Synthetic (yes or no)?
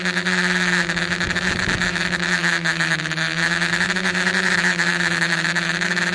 yes